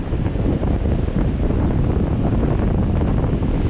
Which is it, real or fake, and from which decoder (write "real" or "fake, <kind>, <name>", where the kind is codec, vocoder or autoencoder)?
real